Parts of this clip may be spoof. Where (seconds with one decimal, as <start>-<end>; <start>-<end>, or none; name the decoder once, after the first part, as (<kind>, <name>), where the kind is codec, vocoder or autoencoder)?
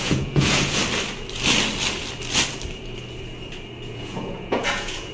0.0-0.8 (vocoder, Vocos); 3.9-5.1